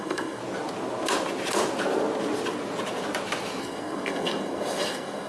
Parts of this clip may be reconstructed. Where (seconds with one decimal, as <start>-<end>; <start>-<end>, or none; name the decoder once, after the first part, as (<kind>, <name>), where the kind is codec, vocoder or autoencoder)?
0.0-0.4 (codec, SNAC); 3.6-5.3